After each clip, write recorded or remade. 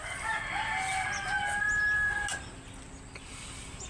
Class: recorded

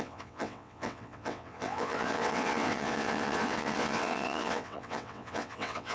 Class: remade